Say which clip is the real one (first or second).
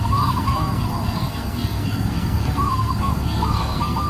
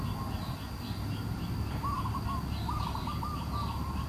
second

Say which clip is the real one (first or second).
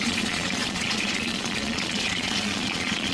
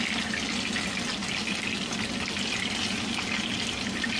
second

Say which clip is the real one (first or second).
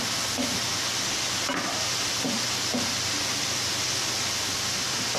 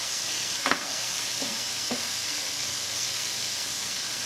first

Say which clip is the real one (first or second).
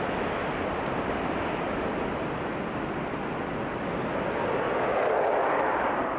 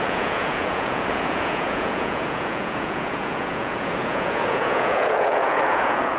first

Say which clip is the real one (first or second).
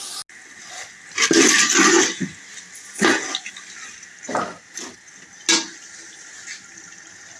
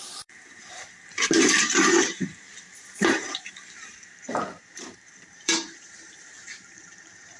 first